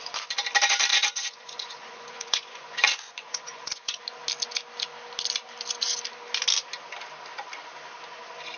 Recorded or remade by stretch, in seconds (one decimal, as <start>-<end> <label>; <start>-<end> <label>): 0.0-0.9 recorded; 0.9-4.0 remade; 4.0-8.6 recorded